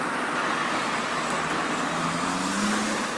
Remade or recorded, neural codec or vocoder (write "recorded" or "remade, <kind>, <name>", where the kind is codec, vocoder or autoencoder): recorded